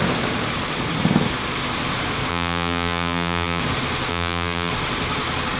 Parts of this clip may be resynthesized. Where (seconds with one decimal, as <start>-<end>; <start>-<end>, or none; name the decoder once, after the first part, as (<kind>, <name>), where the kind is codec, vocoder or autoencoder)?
2.3-3.6 (vocoder, BigVGAN v2); 4.1-4.7